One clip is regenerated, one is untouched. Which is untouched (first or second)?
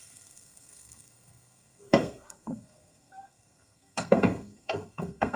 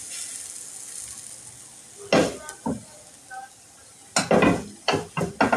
second